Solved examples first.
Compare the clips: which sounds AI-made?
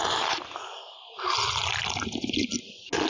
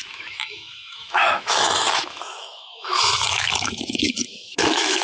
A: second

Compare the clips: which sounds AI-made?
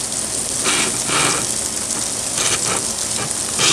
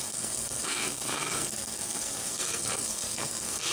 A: second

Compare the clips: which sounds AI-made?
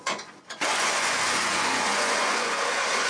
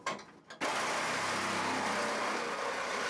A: first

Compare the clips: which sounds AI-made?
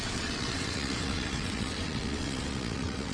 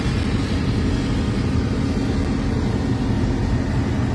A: first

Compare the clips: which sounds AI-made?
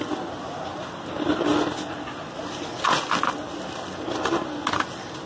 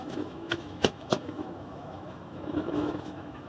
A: second